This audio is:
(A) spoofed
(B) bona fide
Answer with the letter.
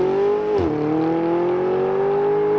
B